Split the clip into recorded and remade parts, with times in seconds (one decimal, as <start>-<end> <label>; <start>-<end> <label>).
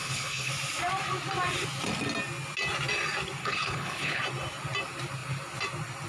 0.0-0.5 remade; 0.5-3.4 recorded; 3.4-4.2 remade; 4.2-6.1 recorded